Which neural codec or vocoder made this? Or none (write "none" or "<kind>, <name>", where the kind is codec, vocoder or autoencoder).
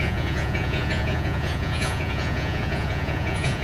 vocoder, Vocos